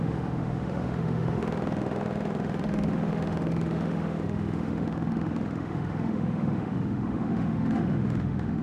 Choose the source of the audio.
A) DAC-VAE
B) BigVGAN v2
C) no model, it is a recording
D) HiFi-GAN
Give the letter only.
A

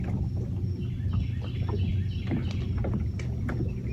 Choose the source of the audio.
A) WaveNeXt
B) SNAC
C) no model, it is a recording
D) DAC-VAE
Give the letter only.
C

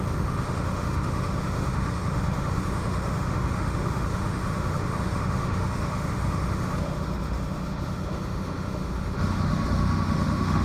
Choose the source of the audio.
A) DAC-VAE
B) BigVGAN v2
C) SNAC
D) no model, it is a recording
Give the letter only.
A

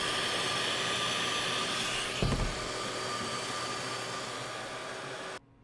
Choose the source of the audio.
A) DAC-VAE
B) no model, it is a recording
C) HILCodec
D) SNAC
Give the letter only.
B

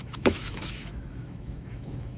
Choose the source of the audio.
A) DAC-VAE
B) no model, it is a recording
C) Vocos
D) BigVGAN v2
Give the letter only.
A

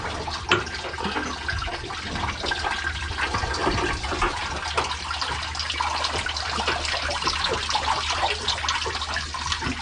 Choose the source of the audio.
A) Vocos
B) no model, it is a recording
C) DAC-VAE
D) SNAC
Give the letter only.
B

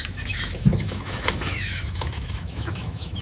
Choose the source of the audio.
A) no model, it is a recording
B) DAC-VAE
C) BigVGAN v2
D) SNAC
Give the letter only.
B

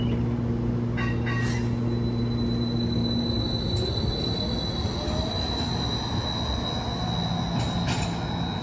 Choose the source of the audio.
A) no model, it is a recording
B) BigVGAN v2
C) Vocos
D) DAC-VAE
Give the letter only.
A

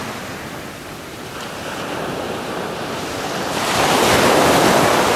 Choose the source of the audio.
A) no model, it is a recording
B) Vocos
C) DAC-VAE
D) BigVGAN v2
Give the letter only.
A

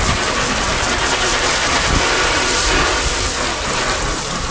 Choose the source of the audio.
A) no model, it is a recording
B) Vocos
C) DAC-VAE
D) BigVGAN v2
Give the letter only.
A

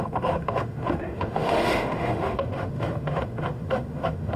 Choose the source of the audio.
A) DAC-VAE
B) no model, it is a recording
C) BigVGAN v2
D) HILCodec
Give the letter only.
A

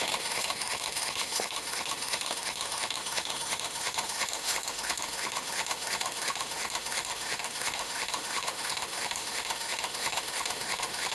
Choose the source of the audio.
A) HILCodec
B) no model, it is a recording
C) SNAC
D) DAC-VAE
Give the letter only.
D